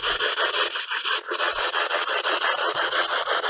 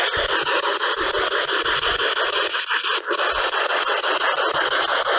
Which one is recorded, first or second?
second